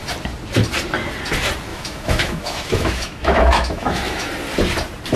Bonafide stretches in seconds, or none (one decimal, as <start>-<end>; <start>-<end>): 0.0-1.7; 4.3-5.2